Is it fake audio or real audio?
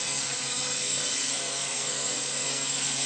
fake